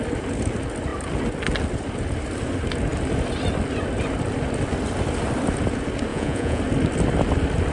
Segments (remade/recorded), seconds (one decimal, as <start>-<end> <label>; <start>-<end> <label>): 0.0-6.1 recorded; 6.1-6.6 remade; 6.6-7.7 recorded